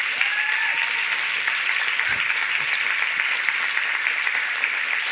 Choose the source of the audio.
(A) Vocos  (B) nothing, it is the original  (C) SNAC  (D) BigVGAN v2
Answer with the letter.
D